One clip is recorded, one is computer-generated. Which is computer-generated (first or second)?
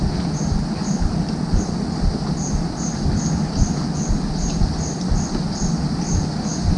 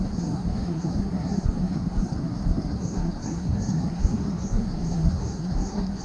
second